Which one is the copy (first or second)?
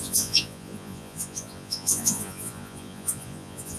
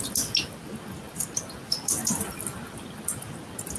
first